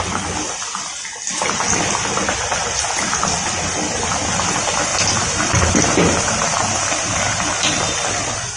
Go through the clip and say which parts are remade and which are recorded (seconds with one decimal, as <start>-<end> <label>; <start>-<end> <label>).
0.0-8.6 recorded